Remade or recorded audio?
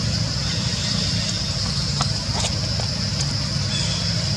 recorded